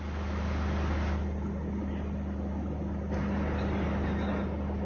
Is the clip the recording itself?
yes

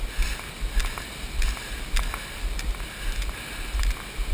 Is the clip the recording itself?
yes